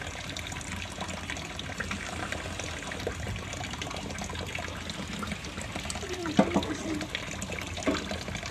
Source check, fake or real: real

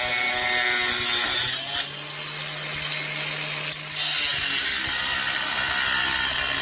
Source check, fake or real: real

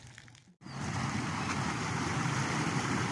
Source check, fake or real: real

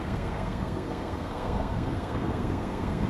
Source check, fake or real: fake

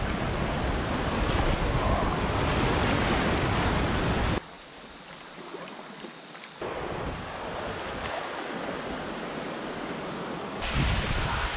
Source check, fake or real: real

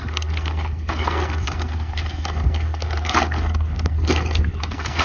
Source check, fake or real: fake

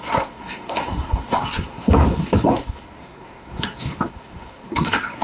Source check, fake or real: fake